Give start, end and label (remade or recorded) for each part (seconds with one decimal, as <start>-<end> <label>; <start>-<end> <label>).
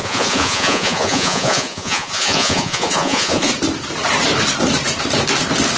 0.0-3.5 remade; 3.5-5.8 recorded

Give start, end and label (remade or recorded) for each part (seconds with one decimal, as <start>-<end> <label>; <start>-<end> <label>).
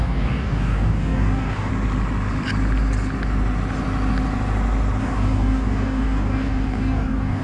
0.0-1.7 remade; 1.7-5.0 recorded; 5.0-7.4 remade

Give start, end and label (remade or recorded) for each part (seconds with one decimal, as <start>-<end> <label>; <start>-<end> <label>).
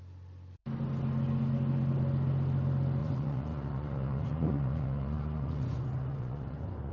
0.0-3.0 recorded; 3.0-6.9 remade